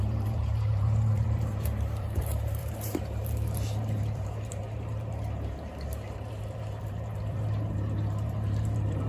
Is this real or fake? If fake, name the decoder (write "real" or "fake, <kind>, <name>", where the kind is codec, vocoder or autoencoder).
fake, vocoder, BigVGAN v2